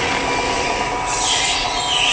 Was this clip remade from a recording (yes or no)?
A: no